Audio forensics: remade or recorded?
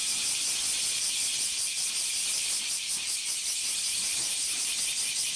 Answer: recorded